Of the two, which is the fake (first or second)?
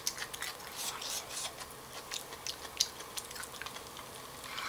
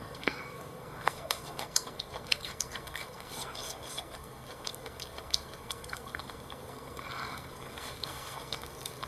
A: second